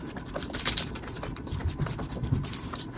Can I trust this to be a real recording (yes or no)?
no